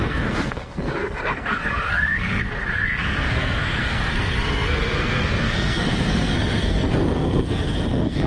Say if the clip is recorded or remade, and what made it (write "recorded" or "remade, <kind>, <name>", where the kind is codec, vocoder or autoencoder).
remade, codec, SNAC